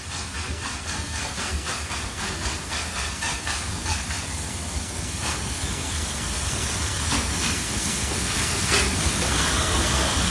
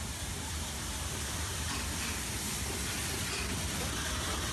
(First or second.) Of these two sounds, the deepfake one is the first